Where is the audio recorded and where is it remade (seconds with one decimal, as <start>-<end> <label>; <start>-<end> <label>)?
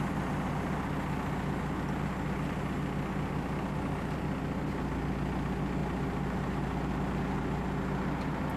0.0-5.8 recorded; 5.8-7.4 remade; 7.4-8.6 recorded